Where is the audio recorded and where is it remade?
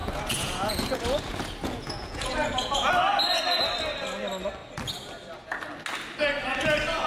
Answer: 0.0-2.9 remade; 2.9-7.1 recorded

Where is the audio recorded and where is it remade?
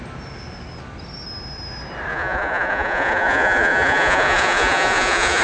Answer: 0.0-2.1 recorded; 2.1-5.4 remade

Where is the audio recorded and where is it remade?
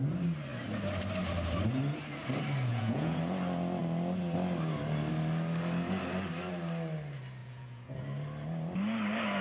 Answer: 0.0-2.7 recorded; 2.7-3.2 remade; 3.2-7.4 recorded; 7.4-8.0 remade; 8.0-9.4 recorded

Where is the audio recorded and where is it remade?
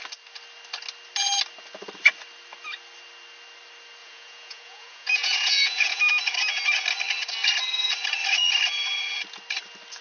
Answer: 0.0-4.0 recorded; 4.0-6.0 remade; 6.0-10.0 recorded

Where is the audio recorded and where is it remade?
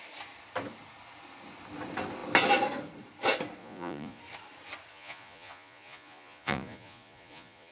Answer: 0.0-3.6 recorded; 3.6-4.2 remade; 4.2-4.9 recorded; 4.9-7.7 remade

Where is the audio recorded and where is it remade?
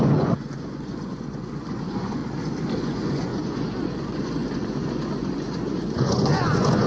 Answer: 0.0-2.2 remade; 2.2-2.8 recorded; 2.8-6.9 remade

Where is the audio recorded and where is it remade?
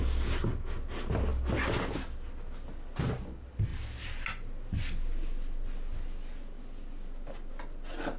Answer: 0.0-8.2 recorded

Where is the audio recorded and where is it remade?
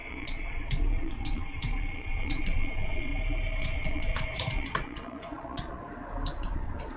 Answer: 0.0-3.1 remade; 3.1-3.6 recorded; 3.6-5.8 remade; 5.8-6.3 recorded; 6.3-7.0 remade